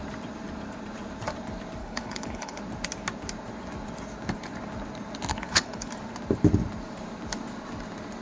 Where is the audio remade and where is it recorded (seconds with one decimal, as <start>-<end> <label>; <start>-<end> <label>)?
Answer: 0.0-1.8 recorded; 1.8-2.6 remade; 2.6-5.3 recorded; 5.3-5.9 remade; 5.9-8.2 recorded